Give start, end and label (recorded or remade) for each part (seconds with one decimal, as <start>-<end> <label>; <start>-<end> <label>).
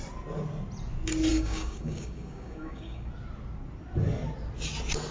0.0-1.3 recorded; 1.3-3.1 remade; 3.1-5.1 recorded